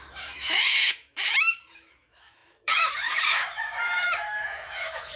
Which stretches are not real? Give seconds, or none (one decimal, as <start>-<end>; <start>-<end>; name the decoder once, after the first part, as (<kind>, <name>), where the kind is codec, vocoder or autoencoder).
0.0-5.2 (autoencoder, DAC-VAE)